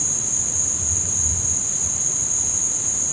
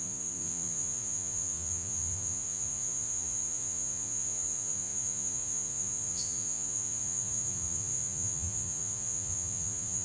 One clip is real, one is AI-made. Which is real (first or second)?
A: first